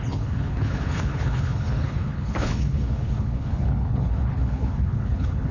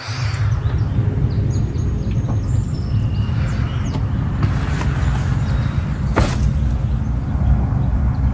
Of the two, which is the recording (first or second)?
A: second